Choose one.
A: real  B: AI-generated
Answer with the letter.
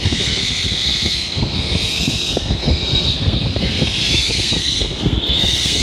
B